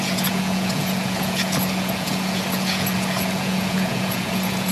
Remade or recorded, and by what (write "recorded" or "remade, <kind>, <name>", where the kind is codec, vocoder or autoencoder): remade, vocoder, Vocos